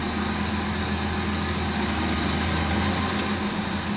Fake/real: real